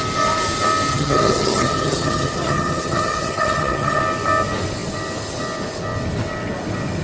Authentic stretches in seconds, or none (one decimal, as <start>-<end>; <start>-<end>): 0.0-0.9; 4.0-7.0